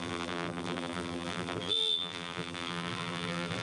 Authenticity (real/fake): fake